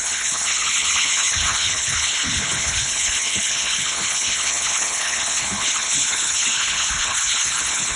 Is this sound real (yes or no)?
no